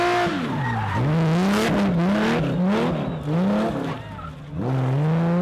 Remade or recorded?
recorded